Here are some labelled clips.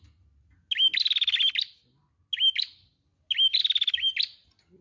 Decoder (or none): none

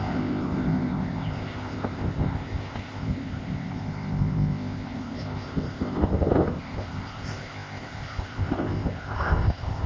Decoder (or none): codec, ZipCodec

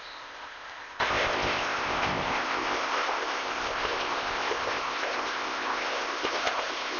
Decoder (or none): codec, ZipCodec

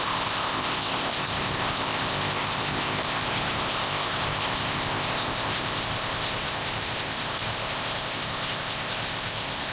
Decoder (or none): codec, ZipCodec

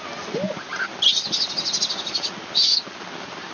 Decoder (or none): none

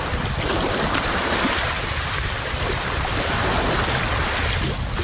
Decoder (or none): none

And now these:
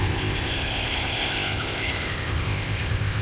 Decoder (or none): codec, ZipCodec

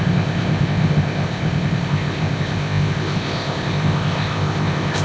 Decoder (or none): codec, ZipCodec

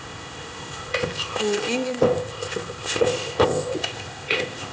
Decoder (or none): codec, ZipCodec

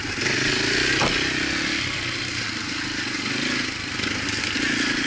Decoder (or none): none